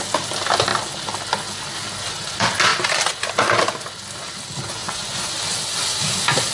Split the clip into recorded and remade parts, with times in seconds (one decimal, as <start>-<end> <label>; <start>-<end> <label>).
0.0-4.8 recorded; 4.8-5.3 remade; 5.3-6.5 recorded